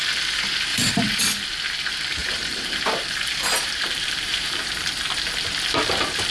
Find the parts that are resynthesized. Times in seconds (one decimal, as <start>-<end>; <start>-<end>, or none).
0.7-1.2; 2.2-4.9